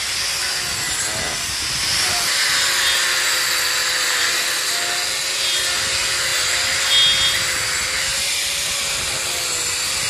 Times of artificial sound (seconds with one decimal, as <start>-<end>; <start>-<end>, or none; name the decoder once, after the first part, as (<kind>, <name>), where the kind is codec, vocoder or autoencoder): 3.8-4.5 (vocoder, BigVGAN v2); 8.1-8.7